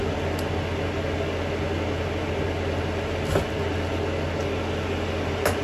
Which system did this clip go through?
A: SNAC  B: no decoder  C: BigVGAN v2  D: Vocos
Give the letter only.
B